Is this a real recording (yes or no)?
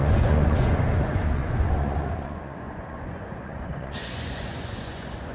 no